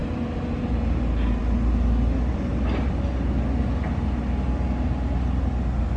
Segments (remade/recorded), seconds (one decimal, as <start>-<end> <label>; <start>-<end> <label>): 0.0-6.0 recorded